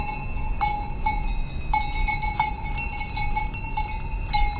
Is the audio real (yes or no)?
yes